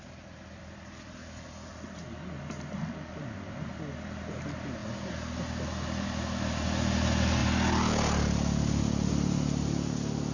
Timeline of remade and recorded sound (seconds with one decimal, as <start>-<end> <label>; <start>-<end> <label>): 0.0-10.3 recorded